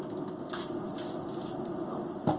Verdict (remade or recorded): recorded